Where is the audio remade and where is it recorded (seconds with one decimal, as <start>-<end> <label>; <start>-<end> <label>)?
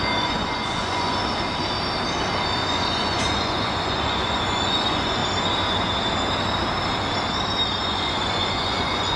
0.0-1.2 remade; 1.2-2.7 recorded; 2.7-5.2 remade; 5.2-7.8 recorded; 7.8-9.2 remade